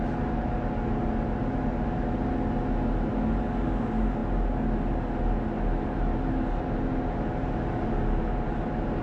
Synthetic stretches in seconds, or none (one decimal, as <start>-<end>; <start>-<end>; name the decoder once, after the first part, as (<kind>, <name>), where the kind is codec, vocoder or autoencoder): none